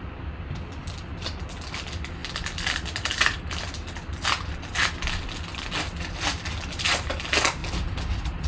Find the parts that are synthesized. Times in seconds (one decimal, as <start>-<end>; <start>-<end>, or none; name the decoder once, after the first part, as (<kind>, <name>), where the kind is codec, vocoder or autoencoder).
none